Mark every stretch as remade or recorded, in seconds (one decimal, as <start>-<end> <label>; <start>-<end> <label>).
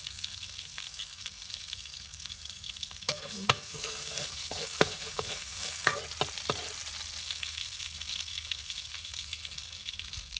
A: 0.0-5.9 remade; 5.9-7.2 recorded; 7.2-10.4 remade